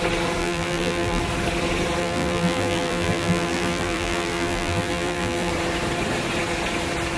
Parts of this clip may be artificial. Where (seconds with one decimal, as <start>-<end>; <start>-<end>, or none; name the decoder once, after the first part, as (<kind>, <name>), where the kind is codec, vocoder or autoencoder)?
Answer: 0.4-1.2 (vocoder, BigVGAN v2); 2.0-5.5